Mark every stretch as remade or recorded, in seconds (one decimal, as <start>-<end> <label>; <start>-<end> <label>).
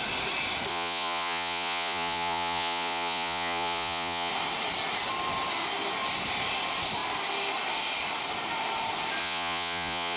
0.0-0.7 recorded; 0.7-4.3 remade; 4.3-9.2 recorded; 9.2-10.2 remade